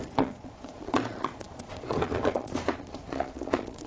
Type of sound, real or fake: fake